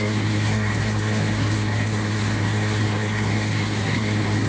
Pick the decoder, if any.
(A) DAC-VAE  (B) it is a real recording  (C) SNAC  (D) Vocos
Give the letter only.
C